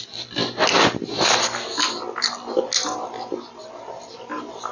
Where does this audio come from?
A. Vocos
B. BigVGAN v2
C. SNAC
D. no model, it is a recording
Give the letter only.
D